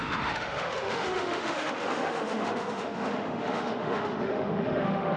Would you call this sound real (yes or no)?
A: no